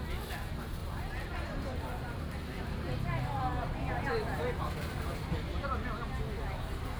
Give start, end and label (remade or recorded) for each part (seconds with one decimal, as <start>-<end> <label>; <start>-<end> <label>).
0.0-0.8 recorded; 0.8-5.0 remade; 5.0-7.0 recorded